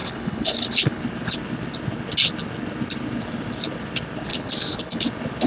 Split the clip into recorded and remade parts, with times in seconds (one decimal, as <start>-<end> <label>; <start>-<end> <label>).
0.0-1.0 remade; 1.0-4.3 recorded; 4.3-5.0 remade; 5.0-5.5 recorded